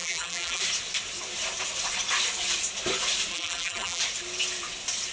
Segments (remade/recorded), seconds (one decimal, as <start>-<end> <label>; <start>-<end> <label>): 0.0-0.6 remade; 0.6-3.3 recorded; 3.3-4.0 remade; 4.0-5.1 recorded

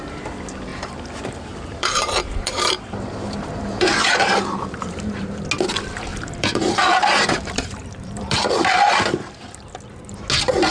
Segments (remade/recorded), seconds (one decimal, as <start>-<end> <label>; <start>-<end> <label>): 0.0-0.7 recorded; 0.7-5.4 remade; 5.4-6.1 recorded; 6.1-8.8 remade; 8.8-10.7 recorded

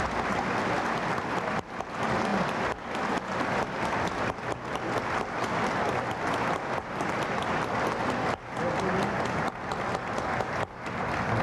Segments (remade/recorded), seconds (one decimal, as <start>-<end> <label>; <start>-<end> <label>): 0.0-11.4 recorded